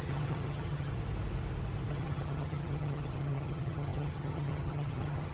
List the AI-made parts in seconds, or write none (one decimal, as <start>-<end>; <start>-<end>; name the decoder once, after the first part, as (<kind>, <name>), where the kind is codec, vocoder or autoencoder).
0.0-0.9 (vocoder, HiFi-GAN); 1.9-5.3